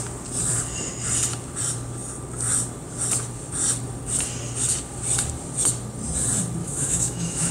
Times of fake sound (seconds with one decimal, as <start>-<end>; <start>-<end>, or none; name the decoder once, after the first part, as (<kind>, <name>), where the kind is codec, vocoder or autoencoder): 6.6-7.5 (autoencoder, DAC-VAE)